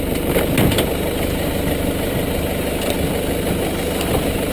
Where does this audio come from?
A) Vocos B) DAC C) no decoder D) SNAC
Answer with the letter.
C